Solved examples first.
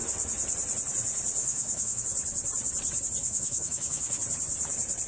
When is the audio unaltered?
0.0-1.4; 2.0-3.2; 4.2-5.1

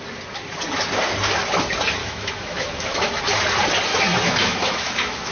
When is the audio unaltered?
0.0-2.0; 3.2-3.9

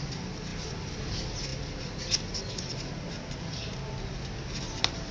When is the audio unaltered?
0.0-5.1